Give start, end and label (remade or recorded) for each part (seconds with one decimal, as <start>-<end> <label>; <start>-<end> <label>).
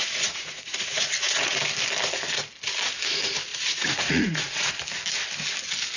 0.0-1.6 remade; 1.6-3.5 recorded; 3.5-4.7 remade; 4.7-6.0 recorded